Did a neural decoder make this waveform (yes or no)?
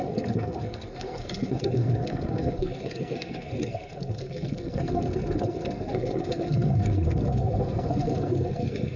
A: yes